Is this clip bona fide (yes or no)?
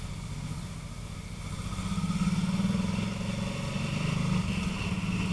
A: yes